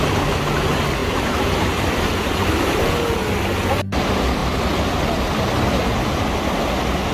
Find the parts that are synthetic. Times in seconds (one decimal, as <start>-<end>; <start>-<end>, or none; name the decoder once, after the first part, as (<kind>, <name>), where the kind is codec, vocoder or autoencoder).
1.0-2.9 (vocoder, BigVGAN v2)